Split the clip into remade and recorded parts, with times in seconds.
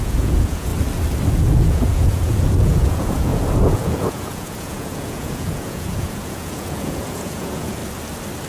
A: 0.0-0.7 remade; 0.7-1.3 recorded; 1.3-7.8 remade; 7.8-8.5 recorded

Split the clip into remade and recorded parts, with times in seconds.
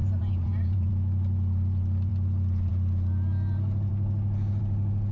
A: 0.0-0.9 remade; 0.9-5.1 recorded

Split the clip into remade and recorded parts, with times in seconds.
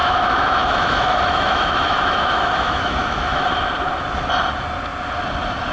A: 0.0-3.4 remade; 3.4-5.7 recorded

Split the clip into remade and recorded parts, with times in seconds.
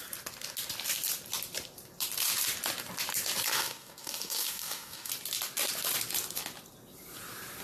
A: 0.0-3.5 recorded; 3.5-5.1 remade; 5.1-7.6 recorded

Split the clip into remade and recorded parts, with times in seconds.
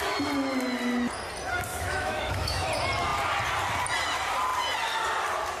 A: 0.0-1.7 recorded; 1.7-2.7 remade; 2.7-5.6 recorded